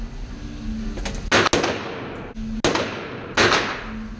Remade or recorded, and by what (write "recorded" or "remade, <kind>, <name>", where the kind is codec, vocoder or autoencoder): recorded